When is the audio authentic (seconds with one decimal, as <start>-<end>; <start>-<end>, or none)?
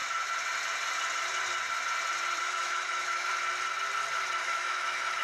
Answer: 0.0-2.4; 3.3-4.4